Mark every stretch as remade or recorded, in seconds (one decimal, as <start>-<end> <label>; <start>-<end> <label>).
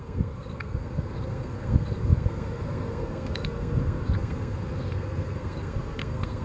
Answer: 0.0-6.4 remade